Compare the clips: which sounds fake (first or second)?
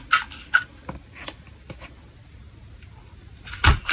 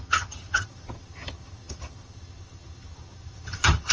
second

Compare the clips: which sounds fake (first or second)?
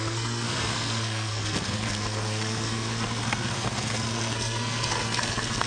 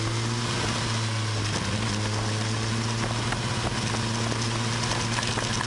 first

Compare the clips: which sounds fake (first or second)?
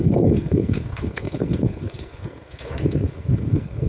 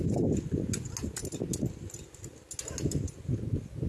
first